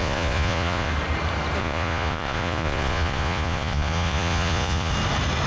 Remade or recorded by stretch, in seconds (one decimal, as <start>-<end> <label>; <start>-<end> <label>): 0.0-0.9 remade; 0.9-1.6 recorded; 1.6-4.9 remade; 4.9-5.5 recorded

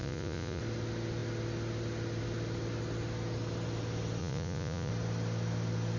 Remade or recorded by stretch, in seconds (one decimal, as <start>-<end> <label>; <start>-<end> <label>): 0.0-0.6 remade; 0.6-4.2 recorded; 4.2-4.9 remade; 4.9-6.0 recorded

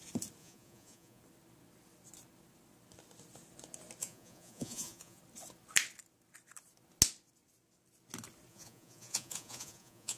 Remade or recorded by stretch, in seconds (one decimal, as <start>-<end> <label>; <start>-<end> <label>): 0.0-0.4 recorded; 0.4-1.2 remade; 1.2-4.0 recorded; 4.0-5.2 remade; 5.2-8.5 recorded; 8.5-10.2 remade

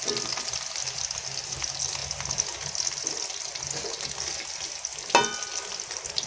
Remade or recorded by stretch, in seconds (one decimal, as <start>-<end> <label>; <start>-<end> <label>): 0.0-6.3 recorded

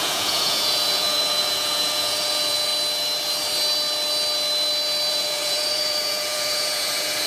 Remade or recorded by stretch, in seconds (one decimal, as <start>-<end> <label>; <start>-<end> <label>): 0.0-2.7 remade; 2.7-5.1 recorded; 5.1-7.3 remade

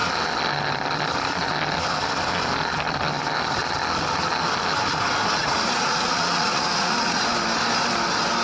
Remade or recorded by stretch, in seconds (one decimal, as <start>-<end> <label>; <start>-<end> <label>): 0.0-5.4 recorded; 5.4-7.2 remade; 7.2-8.4 recorded

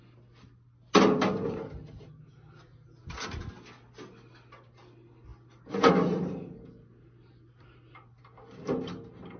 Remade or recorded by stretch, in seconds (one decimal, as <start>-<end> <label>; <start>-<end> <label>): 0.0-9.4 recorded